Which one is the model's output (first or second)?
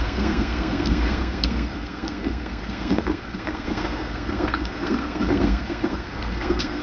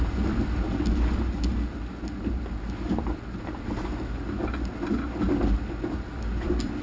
first